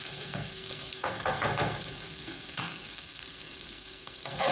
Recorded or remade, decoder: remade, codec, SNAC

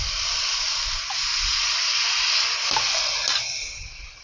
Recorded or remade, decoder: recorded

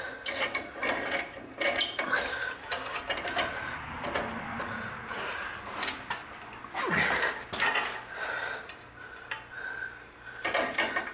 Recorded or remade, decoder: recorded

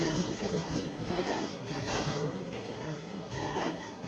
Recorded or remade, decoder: remade, codec, SNAC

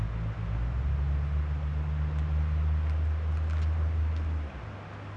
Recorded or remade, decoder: recorded